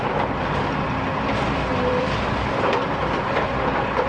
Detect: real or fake fake